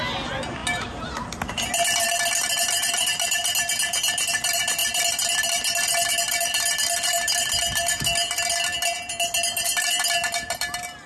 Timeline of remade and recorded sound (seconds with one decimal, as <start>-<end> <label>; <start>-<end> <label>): 0.0-11.1 recorded